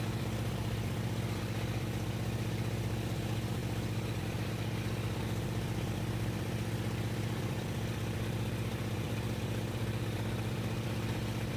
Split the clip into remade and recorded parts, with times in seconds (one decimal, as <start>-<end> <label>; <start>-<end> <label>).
0.0-11.6 remade